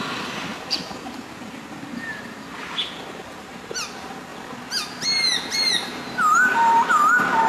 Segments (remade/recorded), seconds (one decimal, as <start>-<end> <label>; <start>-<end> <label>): 0.0-7.5 recorded

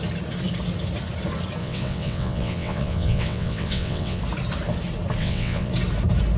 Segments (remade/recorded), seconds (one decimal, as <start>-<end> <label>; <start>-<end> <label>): 0.0-1.6 recorded; 1.6-4.2 remade; 4.2-5.2 recorded; 5.2-5.7 remade; 5.7-6.4 recorded

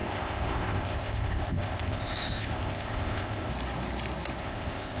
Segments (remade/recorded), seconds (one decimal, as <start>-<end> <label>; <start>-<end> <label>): 0.0-3.5 remade; 3.5-4.4 recorded; 4.4-5.0 remade

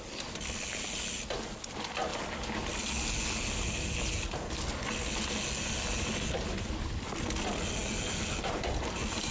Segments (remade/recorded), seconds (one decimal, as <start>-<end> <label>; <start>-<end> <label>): 0.0-9.3 recorded

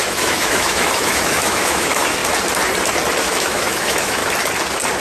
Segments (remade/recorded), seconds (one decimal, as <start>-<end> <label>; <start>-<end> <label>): 0.0-2.2 remade; 2.2-3.2 recorded; 3.2-4.2 remade; 4.2-5.0 recorded

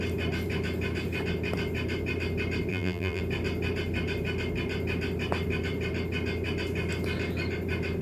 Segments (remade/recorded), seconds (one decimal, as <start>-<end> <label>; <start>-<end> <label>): 0.0-2.7 recorded; 2.7-3.2 remade; 3.2-8.0 recorded